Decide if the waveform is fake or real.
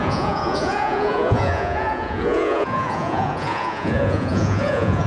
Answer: fake